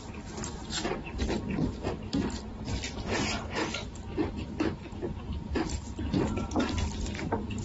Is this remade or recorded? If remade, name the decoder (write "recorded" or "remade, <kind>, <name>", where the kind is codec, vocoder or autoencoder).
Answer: recorded